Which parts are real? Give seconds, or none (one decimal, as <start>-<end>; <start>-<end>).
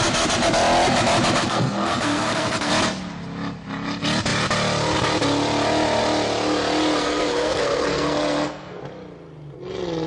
0.0-1.4; 2.7-7.0; 8.8-10.1